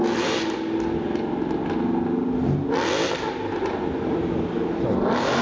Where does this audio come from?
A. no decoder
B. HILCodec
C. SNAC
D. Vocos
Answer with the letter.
A